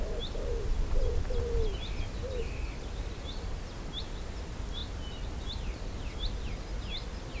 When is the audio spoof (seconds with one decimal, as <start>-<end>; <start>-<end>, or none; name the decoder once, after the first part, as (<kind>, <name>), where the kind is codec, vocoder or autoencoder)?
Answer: none